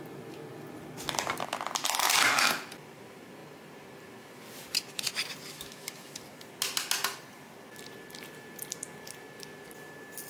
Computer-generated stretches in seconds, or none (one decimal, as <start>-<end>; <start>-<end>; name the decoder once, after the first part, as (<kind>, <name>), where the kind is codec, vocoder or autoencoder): 5.5-6.2 (autoencoder, DAC-VAE)